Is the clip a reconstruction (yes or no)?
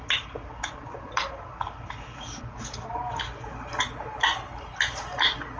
no